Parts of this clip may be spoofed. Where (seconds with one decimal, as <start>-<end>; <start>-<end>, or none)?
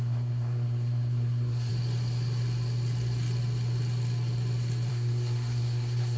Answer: 0.0-1.7; 4.9-6.2